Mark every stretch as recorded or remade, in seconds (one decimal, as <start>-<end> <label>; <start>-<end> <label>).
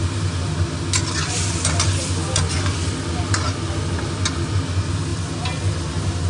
0.0-6.3 recorded